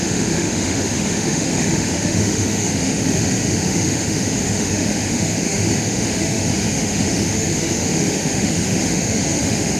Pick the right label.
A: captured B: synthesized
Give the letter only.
B